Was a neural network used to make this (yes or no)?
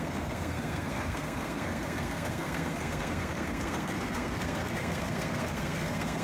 yes